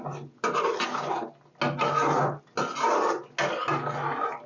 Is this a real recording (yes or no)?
yes